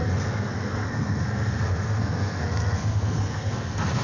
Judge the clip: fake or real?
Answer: fake